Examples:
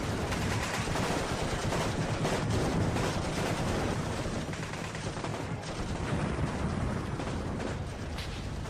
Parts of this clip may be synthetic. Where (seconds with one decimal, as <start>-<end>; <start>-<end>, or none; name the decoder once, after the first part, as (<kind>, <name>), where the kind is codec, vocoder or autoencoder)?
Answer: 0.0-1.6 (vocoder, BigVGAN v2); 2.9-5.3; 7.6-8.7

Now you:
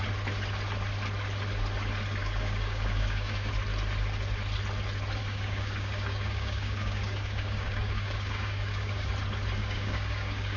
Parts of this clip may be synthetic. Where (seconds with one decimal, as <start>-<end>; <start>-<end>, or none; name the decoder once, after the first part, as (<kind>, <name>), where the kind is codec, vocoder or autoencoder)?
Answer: 2.2-3.5 (codec, DAC); 5.2-9.1; 9.6-10.6

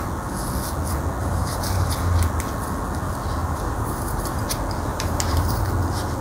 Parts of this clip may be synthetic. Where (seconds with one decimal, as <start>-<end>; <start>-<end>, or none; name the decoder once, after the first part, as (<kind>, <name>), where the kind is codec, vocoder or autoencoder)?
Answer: 1.2-1.9 (vocoder, BigVGAN v2); 3.4-4.4; 4.9-5.7

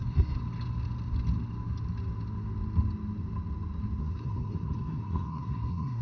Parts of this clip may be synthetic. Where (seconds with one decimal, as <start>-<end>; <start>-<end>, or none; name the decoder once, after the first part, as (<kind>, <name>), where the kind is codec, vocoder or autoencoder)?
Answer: 0.0-0.4 (codec, SNAC); 4.0-6.0

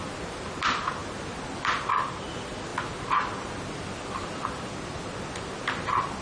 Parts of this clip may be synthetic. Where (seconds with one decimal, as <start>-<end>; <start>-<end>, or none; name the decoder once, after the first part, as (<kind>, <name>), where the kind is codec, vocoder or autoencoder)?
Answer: none